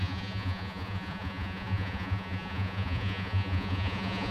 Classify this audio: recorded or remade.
remade